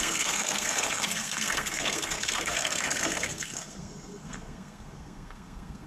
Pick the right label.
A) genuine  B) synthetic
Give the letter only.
B